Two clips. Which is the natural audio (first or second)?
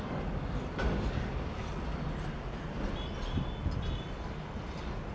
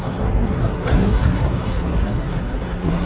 first